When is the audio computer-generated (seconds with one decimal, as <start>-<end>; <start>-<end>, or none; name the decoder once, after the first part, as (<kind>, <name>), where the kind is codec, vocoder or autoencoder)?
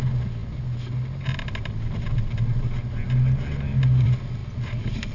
none